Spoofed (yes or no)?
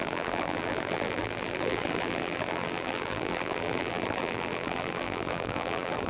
yes